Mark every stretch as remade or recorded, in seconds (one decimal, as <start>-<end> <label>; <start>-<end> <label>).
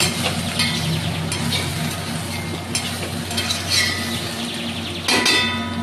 0.0-5.8 recorded